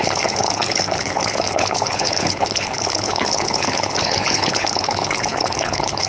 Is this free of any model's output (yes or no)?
no